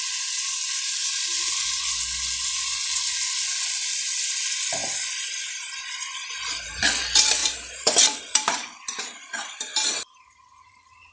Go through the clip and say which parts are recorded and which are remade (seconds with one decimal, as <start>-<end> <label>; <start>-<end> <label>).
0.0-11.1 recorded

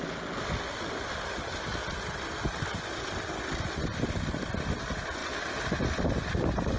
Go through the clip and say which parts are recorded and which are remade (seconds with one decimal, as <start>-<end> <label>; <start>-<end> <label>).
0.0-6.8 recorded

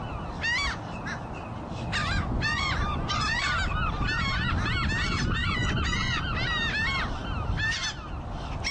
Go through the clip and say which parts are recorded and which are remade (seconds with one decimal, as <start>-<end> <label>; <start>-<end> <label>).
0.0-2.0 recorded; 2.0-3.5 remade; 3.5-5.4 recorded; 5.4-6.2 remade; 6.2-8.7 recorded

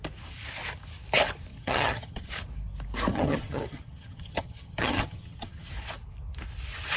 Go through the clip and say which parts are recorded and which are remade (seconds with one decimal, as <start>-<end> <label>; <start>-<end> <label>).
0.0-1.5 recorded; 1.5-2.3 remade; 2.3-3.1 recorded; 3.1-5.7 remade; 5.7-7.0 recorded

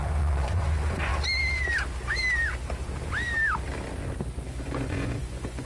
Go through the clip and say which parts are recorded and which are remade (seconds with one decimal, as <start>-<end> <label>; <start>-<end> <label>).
0.0-1.1 remade; 1.1-4.5 recorded; 4.5-5.7 remade

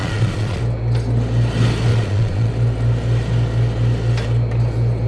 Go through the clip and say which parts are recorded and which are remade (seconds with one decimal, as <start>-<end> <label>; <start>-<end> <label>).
0.0-0.6 remade; 0.6-1.9 recorded; 1.9-2.5 remade; 2.5-5.1 recorded